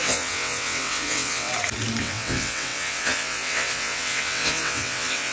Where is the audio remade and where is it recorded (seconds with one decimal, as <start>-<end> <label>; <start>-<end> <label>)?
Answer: 0.0-1.5 remade; 1.5-2.0 recorded; 2.0-5.3 remade